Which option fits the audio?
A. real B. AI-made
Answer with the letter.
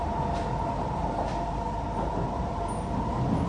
A